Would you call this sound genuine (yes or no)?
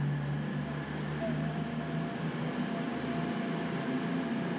yes